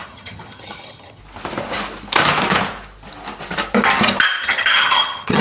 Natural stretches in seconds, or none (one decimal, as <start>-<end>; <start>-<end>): 1.2-4.4